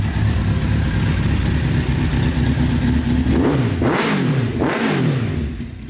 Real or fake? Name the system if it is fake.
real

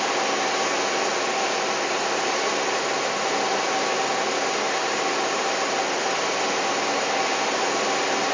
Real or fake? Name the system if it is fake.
real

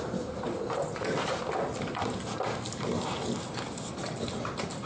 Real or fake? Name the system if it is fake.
real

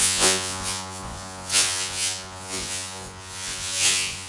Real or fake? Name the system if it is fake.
fake, vocoder, Vocos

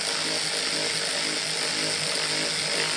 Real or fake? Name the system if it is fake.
real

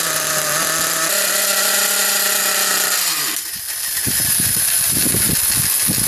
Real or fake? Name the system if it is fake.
real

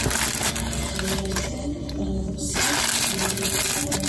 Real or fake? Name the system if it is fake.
real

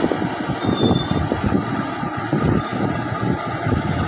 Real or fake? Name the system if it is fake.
real